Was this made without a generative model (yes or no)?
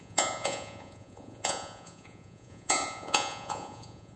no